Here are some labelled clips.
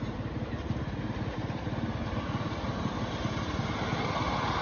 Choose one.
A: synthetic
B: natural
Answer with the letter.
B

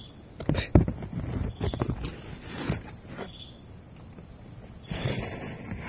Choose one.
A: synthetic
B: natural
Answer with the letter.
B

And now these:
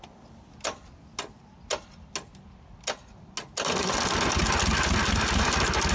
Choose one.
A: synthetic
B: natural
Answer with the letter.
B